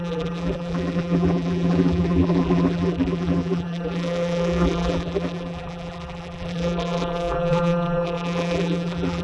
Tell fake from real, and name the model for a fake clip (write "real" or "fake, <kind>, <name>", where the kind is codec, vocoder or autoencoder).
fake, vocoder, BigVGAN v2